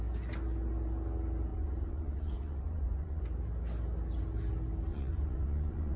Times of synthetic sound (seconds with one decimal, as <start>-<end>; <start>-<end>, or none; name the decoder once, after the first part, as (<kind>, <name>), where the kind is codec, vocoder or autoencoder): 1.5-3.2 (vocoder, Vocos); 4.9-6.0